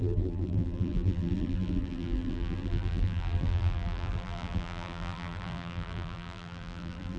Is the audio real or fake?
fake